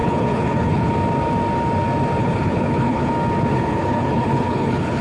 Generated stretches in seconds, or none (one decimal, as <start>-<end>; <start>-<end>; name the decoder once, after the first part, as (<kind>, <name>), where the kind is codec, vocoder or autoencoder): 0.0-0.9 (codec, HILCodec); 2.2-3.1; 3.5-5.0